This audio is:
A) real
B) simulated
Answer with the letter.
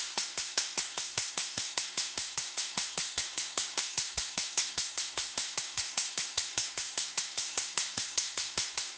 B